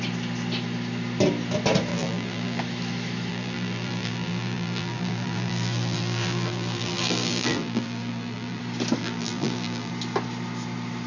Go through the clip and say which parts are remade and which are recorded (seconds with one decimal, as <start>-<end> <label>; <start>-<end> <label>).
0.0-1.9 recorded; 1.9-2.6 remade; 2.6-3.3 recorded; 3.3-8.6 remade; 8.6-9.0 recorded; 9.0-9.9 remade; 9.9-11.1 recorded